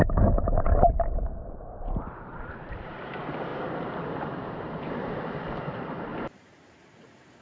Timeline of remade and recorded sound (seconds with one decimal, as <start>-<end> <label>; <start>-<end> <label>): 0.0-7.4 remade